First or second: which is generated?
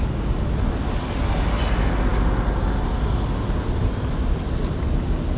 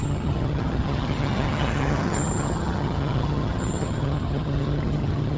second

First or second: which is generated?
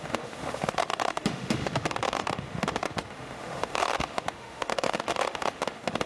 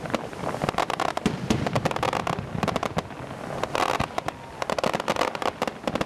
first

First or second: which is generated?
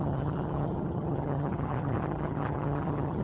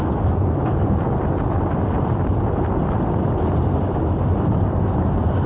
first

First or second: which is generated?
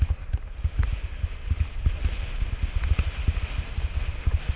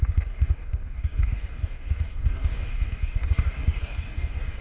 second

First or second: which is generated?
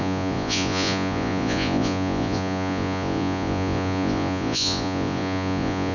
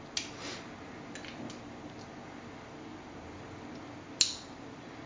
first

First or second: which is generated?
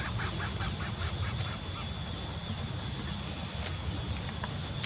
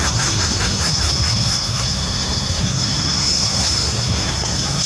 second